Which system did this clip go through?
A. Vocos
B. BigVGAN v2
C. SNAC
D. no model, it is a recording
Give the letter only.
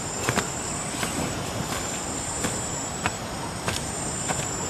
B